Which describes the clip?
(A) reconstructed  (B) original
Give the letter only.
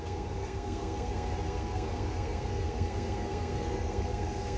A